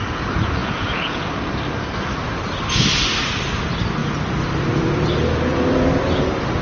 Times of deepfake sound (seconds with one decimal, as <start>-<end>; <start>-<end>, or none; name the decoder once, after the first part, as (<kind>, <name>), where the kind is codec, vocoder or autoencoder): 0.6-1.3 (vocoder, Vocos)